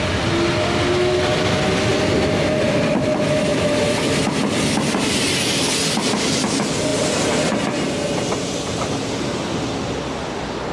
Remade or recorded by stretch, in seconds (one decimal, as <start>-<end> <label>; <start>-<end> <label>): 0.0-10.7 recorded